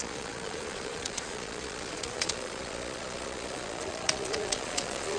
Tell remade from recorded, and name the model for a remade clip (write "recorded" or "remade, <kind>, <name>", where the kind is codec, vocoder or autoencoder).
remade, vocoder, Vocos